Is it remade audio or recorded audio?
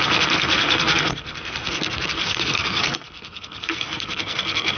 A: remade